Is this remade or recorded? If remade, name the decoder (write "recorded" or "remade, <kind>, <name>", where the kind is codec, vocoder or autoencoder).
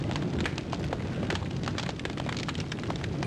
recorded